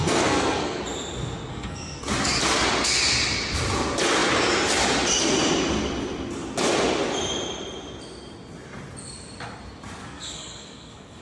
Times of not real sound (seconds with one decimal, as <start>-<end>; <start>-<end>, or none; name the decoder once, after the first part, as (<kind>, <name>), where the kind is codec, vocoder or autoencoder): 0.0-0.8 (codec, SNAC); 1.5-2.0; 10.0-11.2